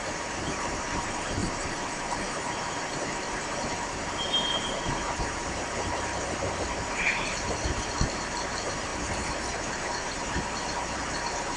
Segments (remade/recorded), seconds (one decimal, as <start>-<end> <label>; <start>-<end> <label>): 0.0-11.6 remade